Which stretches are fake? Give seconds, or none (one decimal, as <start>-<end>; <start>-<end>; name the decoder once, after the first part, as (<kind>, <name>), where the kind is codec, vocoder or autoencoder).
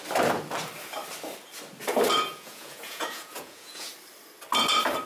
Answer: 2.3-3.9 (vocoder, Vocos)